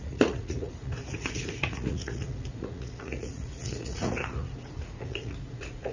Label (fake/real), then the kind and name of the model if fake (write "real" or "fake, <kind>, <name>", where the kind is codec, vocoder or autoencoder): fake, vocoder, Vocos